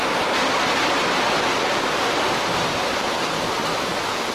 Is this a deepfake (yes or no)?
no